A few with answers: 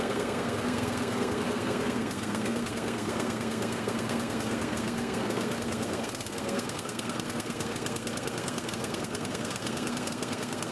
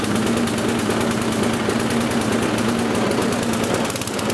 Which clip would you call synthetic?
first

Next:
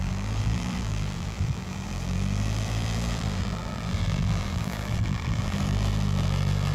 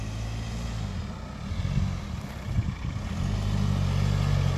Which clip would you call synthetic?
first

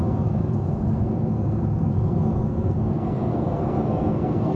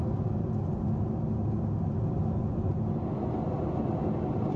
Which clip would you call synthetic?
first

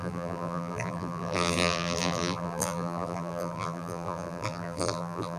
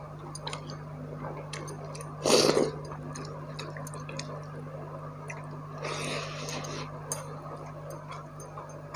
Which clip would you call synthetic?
first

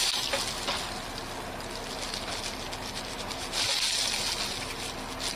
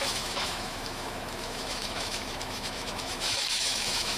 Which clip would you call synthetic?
second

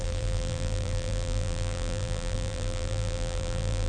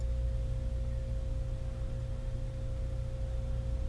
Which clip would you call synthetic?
first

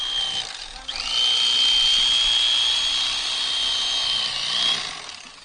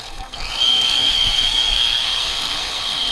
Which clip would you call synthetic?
second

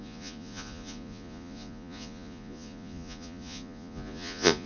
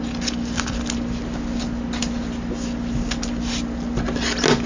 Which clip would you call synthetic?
first